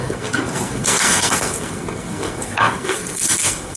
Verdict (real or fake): fake